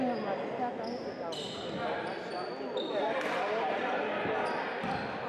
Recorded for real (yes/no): yes